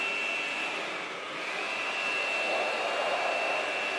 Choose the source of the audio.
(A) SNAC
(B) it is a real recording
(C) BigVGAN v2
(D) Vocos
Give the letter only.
B